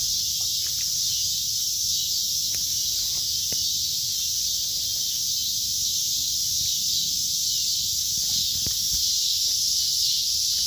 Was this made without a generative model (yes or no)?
yes